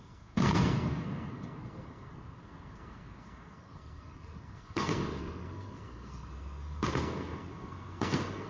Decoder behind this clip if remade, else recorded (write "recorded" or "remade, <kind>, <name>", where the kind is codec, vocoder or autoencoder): remade, codec, SNAC